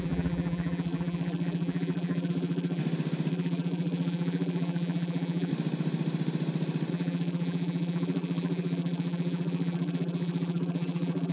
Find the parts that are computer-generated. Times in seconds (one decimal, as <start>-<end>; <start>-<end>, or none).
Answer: 0.0-2.8; 3.3-5.5; 6.9-11.3